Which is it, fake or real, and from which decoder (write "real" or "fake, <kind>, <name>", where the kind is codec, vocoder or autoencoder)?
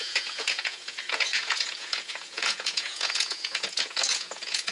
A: fake, vocoder, Vocos